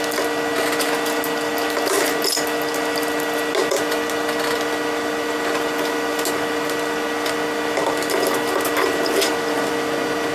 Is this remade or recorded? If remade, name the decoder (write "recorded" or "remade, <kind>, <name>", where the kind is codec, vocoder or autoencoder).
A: recorded